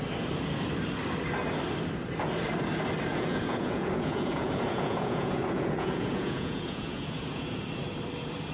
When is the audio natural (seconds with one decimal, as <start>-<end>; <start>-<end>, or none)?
0.0-3.1; 7.6-8.5

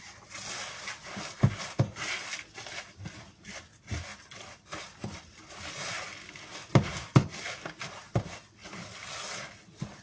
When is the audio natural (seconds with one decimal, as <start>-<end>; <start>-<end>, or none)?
0.0-4.1; 5.5-10.0

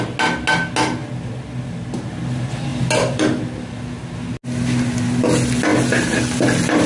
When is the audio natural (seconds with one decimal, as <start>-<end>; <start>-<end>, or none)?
0.0-6.9

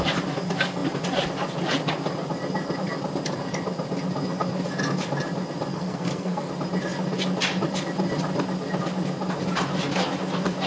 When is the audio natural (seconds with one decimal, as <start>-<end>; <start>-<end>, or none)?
0.0-5.7; 6.5-10.7

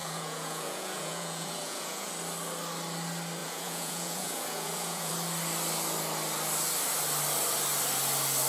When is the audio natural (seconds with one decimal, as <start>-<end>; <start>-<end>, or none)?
2.1-3.4; 5.1-8.5

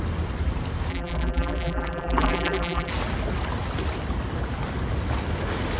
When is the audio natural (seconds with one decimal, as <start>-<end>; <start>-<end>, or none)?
0.0-0.9; 2.9-5.8

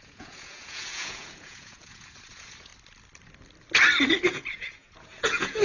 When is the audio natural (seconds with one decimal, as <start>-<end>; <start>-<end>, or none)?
2.7-4.3

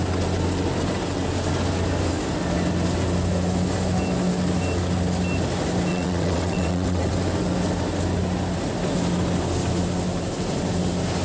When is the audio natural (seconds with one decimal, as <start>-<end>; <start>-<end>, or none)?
0.0-5.9; 7.1-11.2